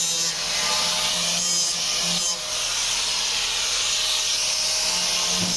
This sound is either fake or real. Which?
real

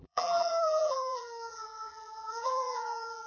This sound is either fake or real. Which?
fake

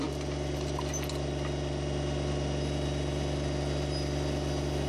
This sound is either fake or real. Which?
real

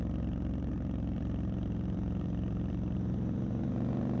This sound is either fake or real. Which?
fake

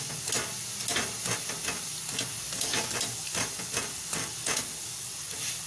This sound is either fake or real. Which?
real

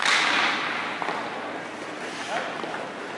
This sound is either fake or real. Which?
real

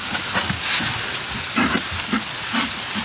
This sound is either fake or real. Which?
real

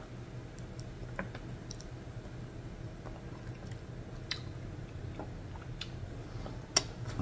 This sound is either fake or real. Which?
real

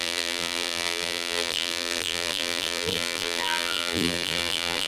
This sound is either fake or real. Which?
fake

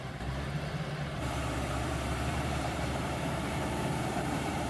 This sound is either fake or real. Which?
fake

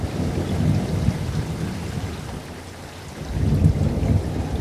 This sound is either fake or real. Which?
real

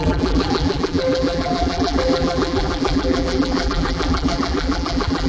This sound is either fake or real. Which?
fake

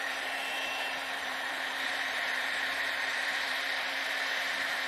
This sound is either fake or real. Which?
fake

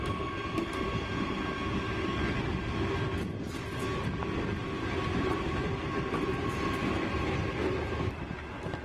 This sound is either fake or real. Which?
real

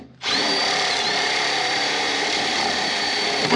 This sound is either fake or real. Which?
fake